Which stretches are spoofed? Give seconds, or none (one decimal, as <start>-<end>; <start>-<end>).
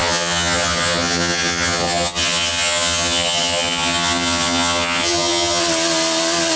0.0-5.6